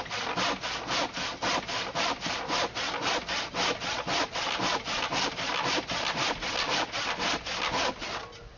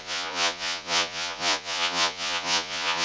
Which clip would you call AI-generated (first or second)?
second